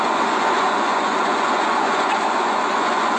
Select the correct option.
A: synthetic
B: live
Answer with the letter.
A